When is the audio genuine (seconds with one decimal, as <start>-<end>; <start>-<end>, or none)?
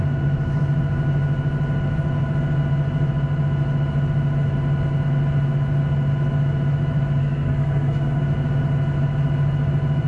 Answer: 0.0-7.2; 8.2-10.1